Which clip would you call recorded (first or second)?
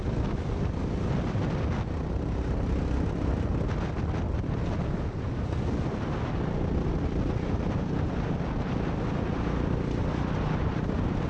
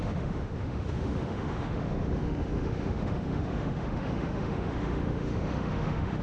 first